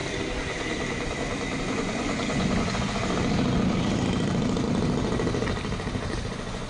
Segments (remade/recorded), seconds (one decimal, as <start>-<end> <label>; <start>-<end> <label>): 0.0-1.6 recorded; 1.6-3.0 remade; 3.0-6.3 recorded; 6.3-6.7 remade